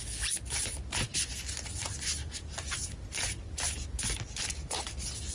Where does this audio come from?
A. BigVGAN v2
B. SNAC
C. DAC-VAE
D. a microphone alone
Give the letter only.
D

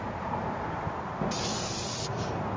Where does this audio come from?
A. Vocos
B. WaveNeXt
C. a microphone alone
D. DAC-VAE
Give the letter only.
C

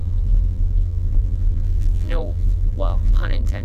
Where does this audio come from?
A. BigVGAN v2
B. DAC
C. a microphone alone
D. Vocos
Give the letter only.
A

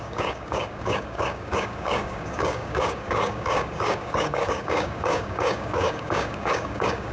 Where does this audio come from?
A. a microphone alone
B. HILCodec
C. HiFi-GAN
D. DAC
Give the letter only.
D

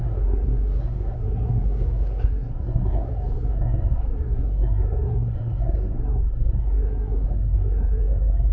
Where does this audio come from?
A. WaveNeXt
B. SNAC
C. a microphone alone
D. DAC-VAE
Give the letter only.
B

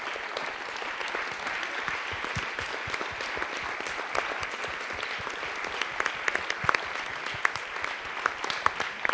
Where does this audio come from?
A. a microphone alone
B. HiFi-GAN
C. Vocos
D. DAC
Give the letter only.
A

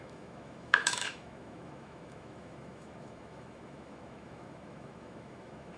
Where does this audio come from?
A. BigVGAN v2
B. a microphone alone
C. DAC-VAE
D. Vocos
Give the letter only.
C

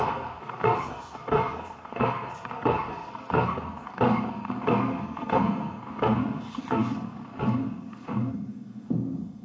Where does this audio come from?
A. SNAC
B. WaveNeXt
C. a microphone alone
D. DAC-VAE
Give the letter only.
A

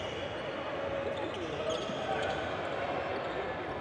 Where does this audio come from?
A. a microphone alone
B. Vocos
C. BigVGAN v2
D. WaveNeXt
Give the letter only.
A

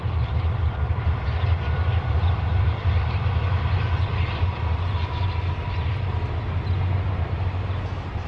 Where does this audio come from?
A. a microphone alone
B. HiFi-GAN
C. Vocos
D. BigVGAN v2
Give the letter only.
D